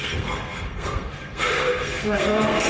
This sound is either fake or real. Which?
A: fake